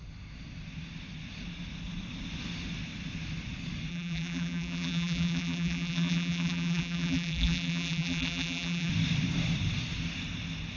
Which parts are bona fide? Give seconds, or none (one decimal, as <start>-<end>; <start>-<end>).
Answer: 0.0-3.9; 8.9-10.8